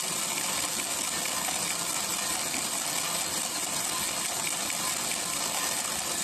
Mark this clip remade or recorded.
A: recorded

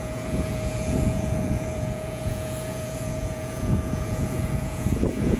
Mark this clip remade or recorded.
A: remade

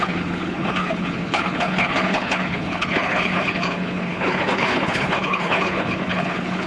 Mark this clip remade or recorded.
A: remade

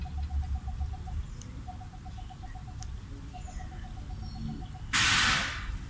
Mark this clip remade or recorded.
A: recorded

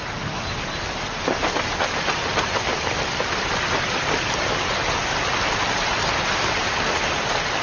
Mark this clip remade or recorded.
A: recorded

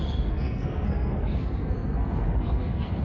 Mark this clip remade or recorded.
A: remade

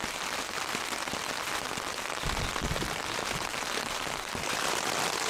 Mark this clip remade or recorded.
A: recorded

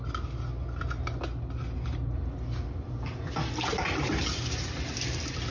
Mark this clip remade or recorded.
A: recorded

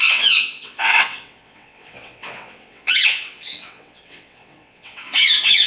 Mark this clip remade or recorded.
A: remade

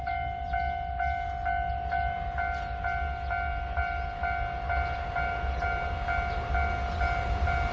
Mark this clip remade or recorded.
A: recorded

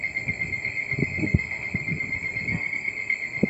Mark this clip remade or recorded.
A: remade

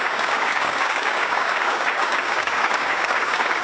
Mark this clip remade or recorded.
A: remade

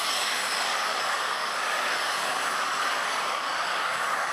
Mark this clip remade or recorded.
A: remade